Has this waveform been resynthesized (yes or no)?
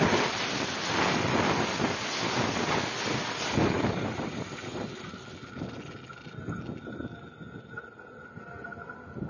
no